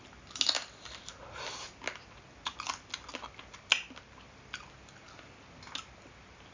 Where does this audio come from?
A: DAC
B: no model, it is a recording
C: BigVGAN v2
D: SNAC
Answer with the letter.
B